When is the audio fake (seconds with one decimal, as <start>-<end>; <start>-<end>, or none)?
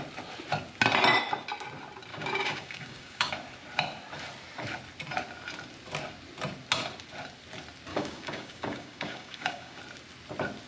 2.1-3.3; 7.9-9.8